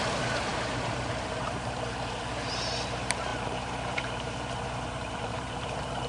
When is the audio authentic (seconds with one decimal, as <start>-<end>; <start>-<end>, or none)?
none